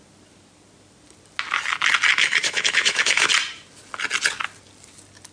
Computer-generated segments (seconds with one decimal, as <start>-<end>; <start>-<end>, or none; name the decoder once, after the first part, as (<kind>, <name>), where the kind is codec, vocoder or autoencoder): 2.2-3.3 (autoencoder, DAC-VAE)